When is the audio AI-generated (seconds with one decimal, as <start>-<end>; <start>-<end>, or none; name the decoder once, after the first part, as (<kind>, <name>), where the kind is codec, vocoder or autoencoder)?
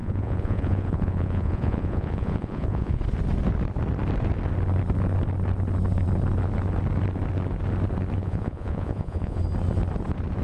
0.0-3.0 (vocoder, Vocos); 8.2-9.4